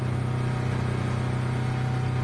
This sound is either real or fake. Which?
real